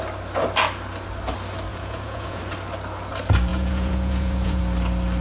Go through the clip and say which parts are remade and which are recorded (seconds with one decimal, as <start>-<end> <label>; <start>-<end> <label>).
0.0-1.7 recorded; 1.7-2.4 remade; 2.4-3.5 recorded; 3.5-4.6 remade; 4.6-5.2 recorded